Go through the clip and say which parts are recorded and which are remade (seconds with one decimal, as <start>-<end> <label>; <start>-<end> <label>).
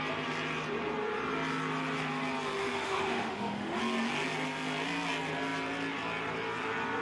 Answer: 0.0-2.6 recorded; 2.6-3.8 remade; 3.8-7.0 recorded